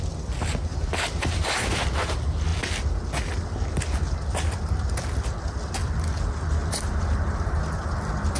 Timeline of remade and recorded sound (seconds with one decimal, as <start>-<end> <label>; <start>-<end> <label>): 0.0-0.7 recorded; 0.7-1.5 remade; 1.5-6.6 recorded; 6.6-7.6 remade; 7.6-8.4 recorded

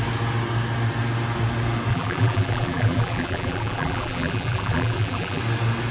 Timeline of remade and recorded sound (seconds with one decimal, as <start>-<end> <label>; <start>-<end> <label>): 0.0-1.9 recorded; 1.9-5.4 remade; 5.4-5.9 recorded